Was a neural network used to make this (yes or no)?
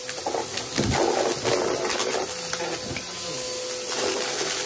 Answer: no